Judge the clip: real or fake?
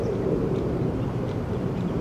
fake